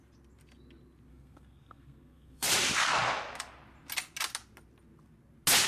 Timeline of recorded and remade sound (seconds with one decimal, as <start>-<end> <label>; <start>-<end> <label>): 0.0-1.1 recorded; 1.1-2.5 remade; 2.5-5.7 recorded